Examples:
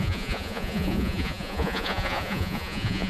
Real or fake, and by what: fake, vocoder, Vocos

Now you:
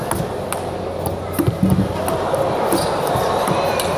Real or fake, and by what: real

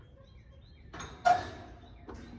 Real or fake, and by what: real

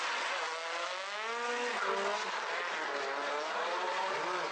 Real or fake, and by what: real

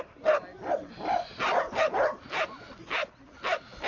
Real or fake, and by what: real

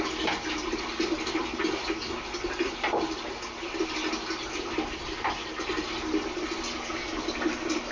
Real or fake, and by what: real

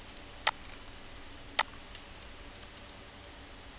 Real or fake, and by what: real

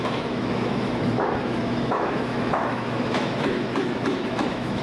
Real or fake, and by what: fake, autoencoder, DAC-VAE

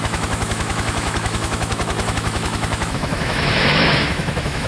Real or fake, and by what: fake, autoencoder, DAC-VAE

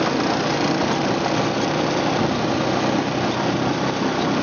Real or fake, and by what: real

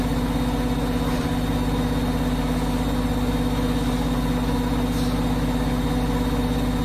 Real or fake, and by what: real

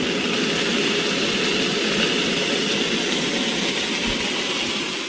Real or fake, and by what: real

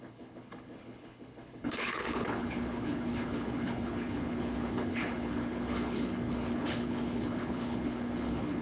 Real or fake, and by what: fake, codec, HILCodec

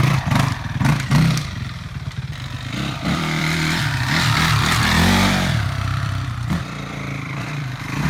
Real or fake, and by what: fake, vocoder, BigVGAN v2